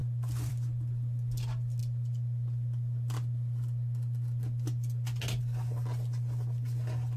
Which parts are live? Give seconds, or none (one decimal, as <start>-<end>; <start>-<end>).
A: 0.0-7.2